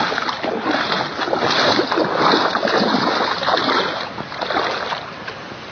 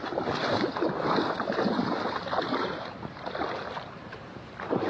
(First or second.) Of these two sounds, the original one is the first